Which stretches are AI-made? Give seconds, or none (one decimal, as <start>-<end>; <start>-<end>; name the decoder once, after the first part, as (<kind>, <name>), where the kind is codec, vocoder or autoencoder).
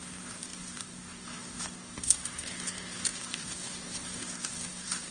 0.0-5.1 (codec, DAC)